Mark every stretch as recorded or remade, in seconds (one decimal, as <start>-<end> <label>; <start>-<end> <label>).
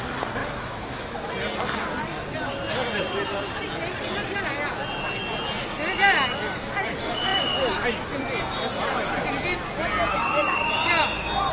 0.0-0.4 recorded; 0.4-1.3 remade; 1.3-11.5 recorded